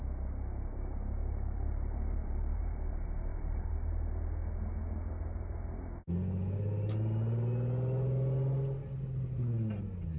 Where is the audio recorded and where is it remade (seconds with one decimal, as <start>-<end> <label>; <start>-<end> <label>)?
0.0-1.2 recorded; 1.2-2.8 remade; 2.8-3.3 recorded; 3.3-4.1 remade; 4.1-10.2 recorded